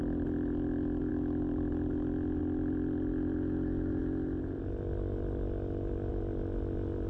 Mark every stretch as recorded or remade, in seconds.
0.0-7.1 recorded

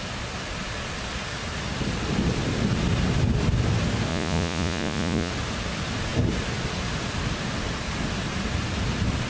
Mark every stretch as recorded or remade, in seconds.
0.0-4.1 recorded; 4.1-5.3 remade; 5.3-9.3 recorded